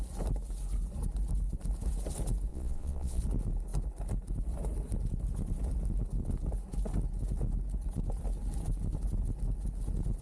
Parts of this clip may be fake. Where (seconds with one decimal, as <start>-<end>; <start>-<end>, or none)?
2.5-3.2